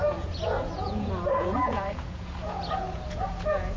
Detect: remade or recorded remade